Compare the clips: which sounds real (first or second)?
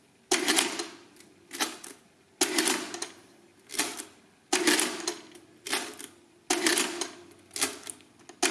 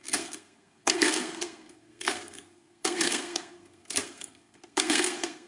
first